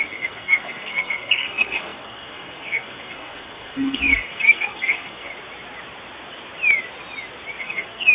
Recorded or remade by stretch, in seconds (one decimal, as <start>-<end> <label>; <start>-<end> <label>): 0.0-5.3 remade; 5.3-7.6 recorded; 7.6-8.1 remade